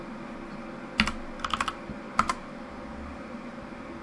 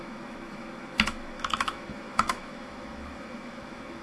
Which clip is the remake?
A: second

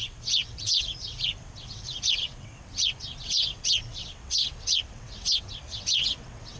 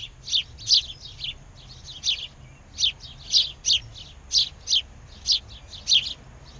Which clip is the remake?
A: first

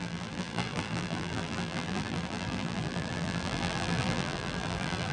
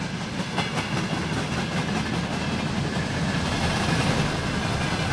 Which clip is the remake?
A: first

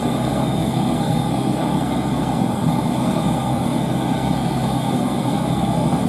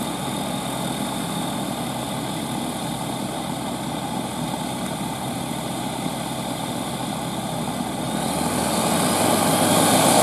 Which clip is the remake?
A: first